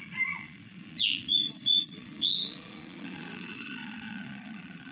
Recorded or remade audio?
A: remade